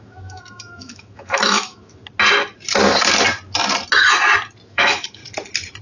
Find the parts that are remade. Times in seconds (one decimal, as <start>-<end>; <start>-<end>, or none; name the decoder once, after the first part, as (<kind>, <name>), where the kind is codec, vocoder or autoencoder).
0.0-2.0 (autoencoder, DAC-VAE); 4.7-5.2